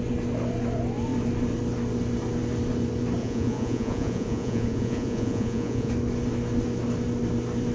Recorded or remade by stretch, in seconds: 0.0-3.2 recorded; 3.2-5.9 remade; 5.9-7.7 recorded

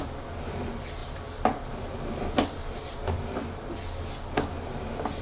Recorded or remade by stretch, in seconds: 0.0-5.2 recorded

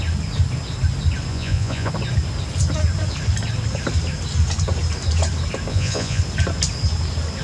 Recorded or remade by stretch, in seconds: 0.0-1.3 recorded; 1.3-1.9 remade; 1.9-5.7 recorded; 5.7-6.2 remade; 6.2-7.4 recorded